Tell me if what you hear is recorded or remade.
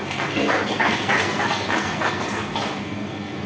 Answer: remade